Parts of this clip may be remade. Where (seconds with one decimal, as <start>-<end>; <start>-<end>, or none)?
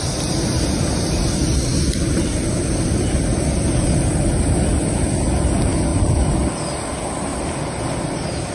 1.7-4.9; 5.9-6.5; 7.3-8.5